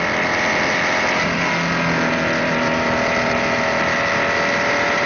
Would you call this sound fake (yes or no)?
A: no